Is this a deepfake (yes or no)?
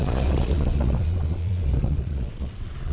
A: yes